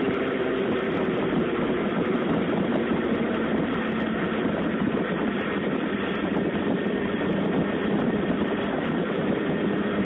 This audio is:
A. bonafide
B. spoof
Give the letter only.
B